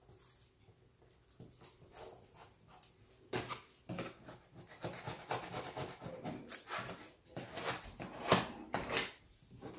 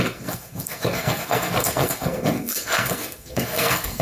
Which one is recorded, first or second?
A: first